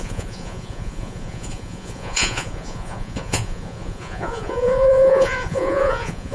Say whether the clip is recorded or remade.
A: remade